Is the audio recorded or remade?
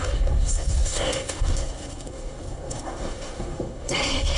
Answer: remade